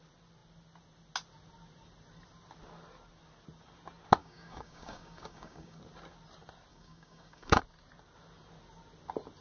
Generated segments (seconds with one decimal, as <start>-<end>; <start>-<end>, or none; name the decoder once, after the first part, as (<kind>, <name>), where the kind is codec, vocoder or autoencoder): 4.2-5.8 (codec, DAC); 6.7-7.6